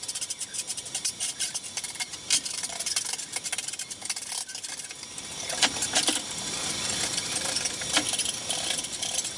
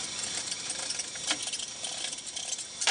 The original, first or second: second